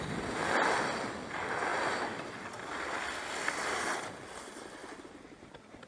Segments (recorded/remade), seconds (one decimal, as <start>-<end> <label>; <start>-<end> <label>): 0.0-5.9 recorded